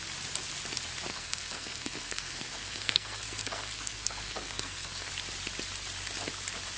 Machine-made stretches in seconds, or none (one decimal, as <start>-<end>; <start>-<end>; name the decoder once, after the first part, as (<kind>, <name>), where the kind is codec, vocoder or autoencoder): 1.1-5.1 (codec, SNAC)